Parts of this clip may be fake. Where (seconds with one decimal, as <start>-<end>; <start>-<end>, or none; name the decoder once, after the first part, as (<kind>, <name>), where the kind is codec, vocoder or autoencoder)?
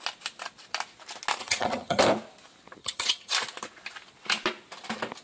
1.4-2.0 (vocoder, HiFi-GAN); 2.8-3.3